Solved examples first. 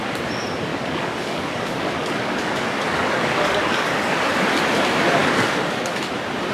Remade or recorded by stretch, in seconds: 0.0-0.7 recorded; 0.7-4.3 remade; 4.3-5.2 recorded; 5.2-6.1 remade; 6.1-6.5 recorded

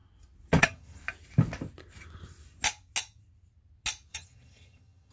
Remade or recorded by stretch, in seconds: 0.0-0.6 recorded; 0.6-1.0 remade; 1.0-4.1 recorded; 4.1-5.1 remade